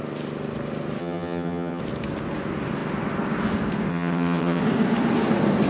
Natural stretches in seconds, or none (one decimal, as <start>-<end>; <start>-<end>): 0.0-1.0; 1.8-3.9; 4.6-5.7